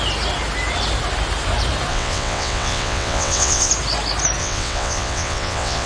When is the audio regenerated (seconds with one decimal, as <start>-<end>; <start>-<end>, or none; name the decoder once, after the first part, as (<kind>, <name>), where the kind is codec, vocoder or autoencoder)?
1.9-3.7 (vocoder, WaveNeXt); 4.4-5.9